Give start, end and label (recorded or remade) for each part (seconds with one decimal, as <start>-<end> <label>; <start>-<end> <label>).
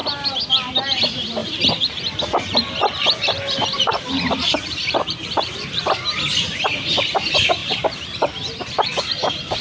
0.0-1.4 recorded; 1.4-5.8 remade; 5.8-7.6 recorded; 7.6-9.1 remade; 9.1-9.6 recorded